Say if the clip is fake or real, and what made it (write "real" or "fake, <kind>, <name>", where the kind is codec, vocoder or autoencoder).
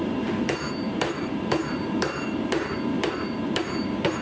fake, vocoder, BigVGAN v2